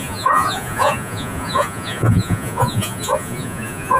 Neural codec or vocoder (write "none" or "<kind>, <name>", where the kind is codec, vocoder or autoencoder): vocoder, Vocos